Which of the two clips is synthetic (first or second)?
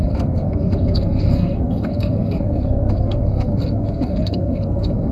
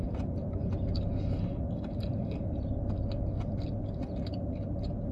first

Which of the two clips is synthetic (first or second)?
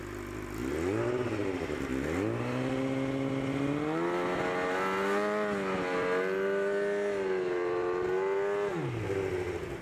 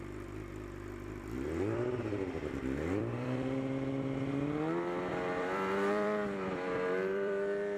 second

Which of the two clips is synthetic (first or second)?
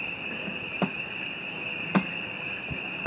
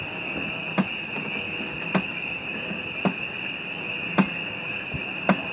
first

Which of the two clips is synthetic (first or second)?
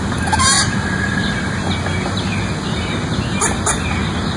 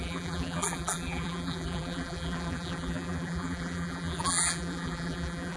second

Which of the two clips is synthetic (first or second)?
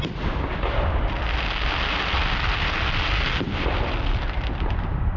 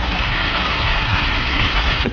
second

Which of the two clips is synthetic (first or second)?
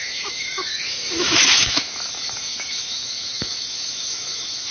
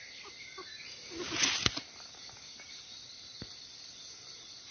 first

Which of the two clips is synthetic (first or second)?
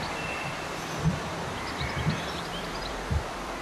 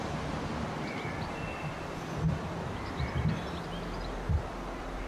first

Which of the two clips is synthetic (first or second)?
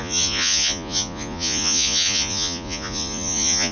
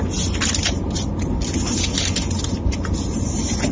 first